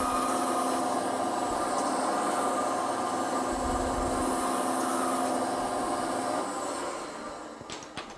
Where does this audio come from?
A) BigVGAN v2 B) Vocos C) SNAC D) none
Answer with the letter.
D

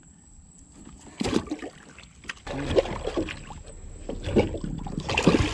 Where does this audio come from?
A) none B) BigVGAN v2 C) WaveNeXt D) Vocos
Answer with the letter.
A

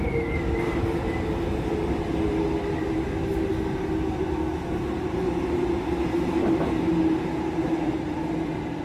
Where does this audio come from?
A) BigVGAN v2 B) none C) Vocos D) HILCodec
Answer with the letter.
B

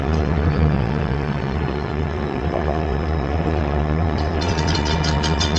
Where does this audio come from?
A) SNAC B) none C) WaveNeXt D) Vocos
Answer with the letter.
C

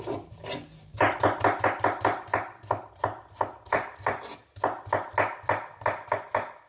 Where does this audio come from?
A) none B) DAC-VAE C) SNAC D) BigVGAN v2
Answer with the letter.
A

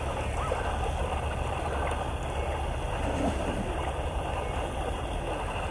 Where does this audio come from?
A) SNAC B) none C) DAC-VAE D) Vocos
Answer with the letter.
B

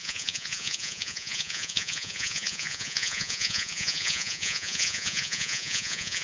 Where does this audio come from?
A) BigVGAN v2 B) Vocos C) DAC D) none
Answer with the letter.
B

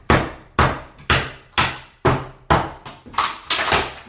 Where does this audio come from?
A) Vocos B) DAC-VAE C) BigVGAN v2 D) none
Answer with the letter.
D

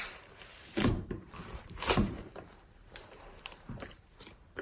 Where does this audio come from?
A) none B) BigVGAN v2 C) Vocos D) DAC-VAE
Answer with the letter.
B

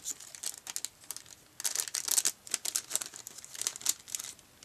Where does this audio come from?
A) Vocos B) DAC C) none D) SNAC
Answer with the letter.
C